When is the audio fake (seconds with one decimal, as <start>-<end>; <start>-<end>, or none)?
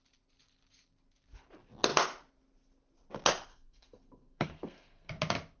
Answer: 3.5-5.1